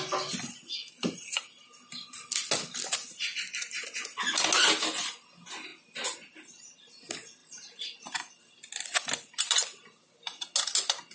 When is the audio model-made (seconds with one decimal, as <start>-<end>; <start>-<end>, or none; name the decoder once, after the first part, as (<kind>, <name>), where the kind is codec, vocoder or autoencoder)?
0.8-1.4 (vocoder, BigVGAN v2); 3.0-3.9; 7.4-8.4